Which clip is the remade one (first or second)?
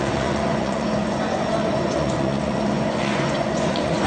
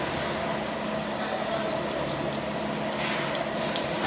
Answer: first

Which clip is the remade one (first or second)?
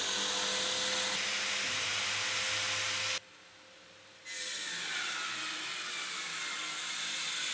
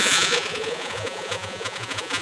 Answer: second